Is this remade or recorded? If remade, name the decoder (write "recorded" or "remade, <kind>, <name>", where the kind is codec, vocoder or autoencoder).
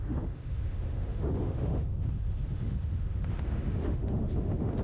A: remade, autoencoder, DAC-VAE